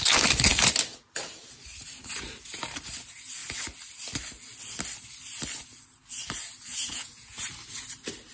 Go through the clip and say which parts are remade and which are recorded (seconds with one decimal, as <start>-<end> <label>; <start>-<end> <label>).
0.0-6.7 recorded; 6.7-7.4 remade; 7.4-8.3 recorded